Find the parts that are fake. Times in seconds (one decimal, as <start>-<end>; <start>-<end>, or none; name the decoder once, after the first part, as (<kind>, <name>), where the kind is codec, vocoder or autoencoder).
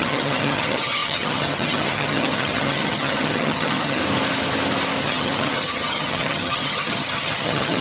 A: 0.0-4.0 (vocoder, HiFi-GAN); 5.0-7.8